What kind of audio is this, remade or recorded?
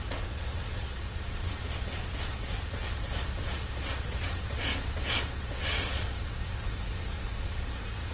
remade